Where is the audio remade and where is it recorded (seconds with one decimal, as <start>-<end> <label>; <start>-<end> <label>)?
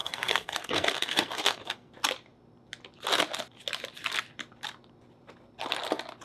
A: 0.0-1.9 remade; 1.9-6.2 recorded